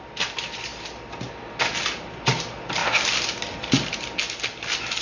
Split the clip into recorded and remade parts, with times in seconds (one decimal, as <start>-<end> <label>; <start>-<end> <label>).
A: 0.0-5.0 recorded